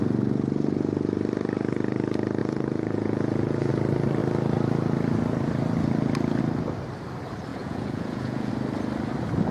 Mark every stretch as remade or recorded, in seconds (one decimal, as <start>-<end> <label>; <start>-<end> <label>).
0.0-2.4 recorded; 2.4-3.7 remade; 3.7-7.5 recorded; 7.5-8.5 remade; 8.5-9.5 recorded